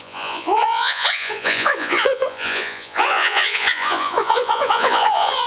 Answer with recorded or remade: remade